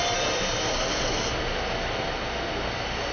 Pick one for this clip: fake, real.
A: real